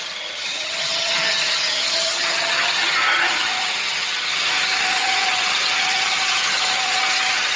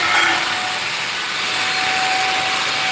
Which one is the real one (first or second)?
second